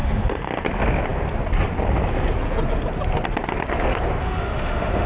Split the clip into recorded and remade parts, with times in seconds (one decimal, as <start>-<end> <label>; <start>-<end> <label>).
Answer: 0.0-0.6 remade; 0.6-4.2 recorded; 4.2-5.1 remade